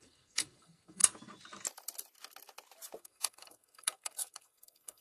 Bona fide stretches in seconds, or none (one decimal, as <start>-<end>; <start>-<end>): 1.0-3.0